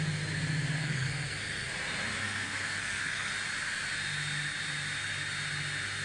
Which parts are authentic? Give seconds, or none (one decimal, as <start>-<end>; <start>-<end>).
0.0-0.8; 1.7-2.2; 3.3-6.0